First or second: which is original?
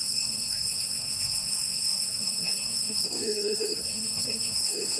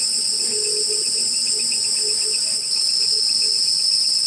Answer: second